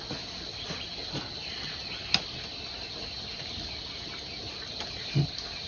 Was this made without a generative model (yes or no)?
yes